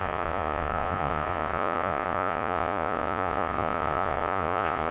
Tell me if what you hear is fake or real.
fake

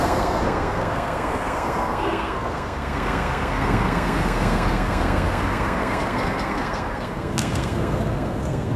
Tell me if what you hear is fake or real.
fake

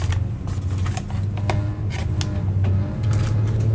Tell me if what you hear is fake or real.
real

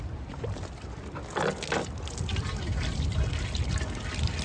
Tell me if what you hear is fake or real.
real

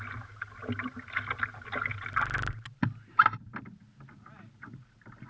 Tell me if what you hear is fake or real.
real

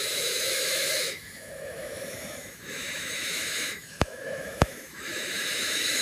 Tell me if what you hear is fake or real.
fake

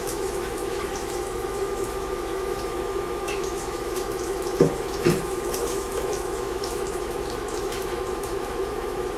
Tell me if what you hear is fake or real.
fake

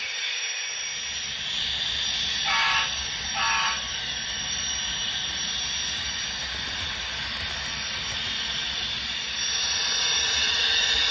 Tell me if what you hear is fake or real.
real